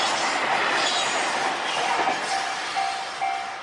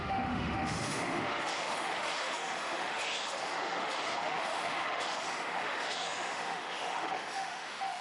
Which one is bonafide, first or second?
first